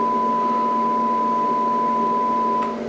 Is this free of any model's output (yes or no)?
yes